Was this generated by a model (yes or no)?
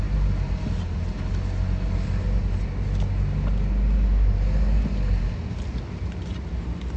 no